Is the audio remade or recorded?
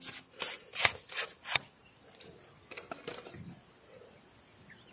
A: recorded